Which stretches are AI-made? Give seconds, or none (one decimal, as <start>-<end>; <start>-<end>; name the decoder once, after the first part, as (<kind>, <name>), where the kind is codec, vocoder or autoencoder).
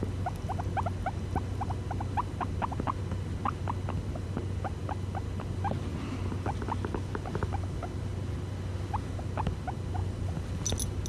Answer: none